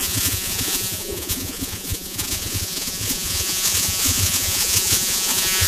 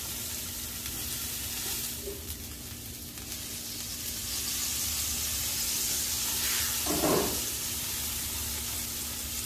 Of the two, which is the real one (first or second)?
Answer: second